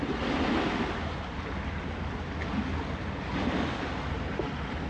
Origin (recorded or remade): recorded